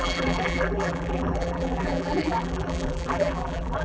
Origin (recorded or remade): remade